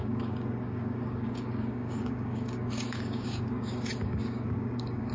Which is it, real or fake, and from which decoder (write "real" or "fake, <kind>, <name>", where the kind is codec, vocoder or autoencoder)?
fake, codec, DAC